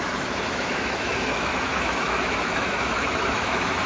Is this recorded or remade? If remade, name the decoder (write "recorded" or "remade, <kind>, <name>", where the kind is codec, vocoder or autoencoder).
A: remade, autoencoder, DAC-VAE